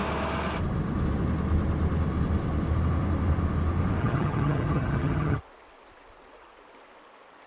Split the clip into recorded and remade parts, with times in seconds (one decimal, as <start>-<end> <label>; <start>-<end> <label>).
0.0-4.0 recorded; 4.0-5.4 remade; 5.4-7.5 recorded